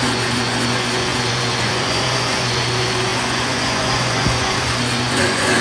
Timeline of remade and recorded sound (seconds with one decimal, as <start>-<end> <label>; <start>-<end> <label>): 0.0-5.6 remade

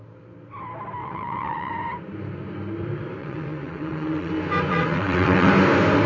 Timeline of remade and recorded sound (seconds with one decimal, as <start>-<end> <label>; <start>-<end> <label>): 0.0-1.0 recorded; 1.0-1.7 remade; 1.7-3.2 recorded; 3.2-4.3 remade; 4.3-4.7 recorded; 4.7-5.5 remade; 5.5-6.1 recorded

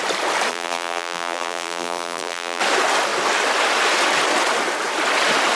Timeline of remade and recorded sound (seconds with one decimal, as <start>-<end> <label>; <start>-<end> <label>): 0.0-0.5 recorded; 0.5-2.6 remade; 2.6-5.6 recorded

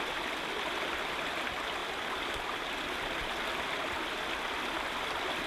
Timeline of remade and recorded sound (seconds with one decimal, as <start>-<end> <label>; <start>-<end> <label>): 0.0-5.5 recorded

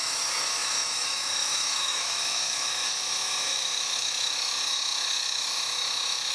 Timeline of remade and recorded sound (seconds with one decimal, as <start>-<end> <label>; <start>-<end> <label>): 0.0-6.3 remade